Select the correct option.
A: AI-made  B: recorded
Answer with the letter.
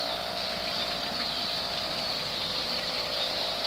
B